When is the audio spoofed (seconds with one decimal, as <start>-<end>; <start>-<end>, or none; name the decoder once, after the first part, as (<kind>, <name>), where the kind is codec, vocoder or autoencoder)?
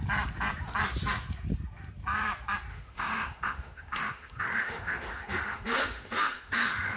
2.7-7.0 (autoencoder, DAC-VAE)